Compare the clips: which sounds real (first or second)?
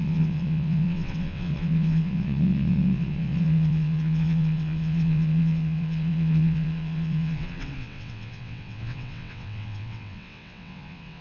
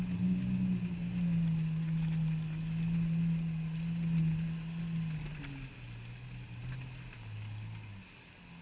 second